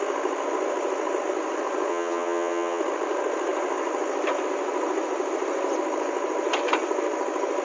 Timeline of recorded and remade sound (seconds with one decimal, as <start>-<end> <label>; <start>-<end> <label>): 0.0-1.9 recorded; 1.9-2.8 remade; 2.8-7.6 recorded